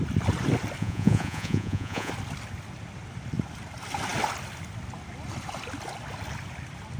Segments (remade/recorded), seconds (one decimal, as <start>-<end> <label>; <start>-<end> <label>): 0.0-0.8 recorded; 0.8-2.1 remade; 2.1-7.0 recorded